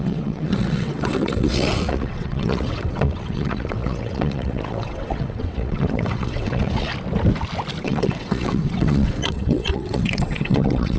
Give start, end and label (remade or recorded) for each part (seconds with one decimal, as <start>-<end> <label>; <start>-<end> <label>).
0.0-6.9 remade; 6.9-7.8 recorded; 7.8-11.0 remade